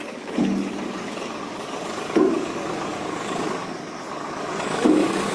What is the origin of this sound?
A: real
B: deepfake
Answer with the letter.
B